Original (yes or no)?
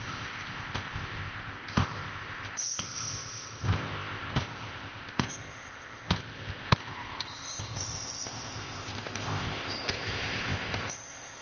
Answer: no